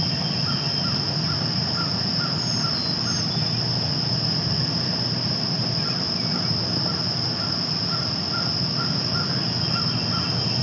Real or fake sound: real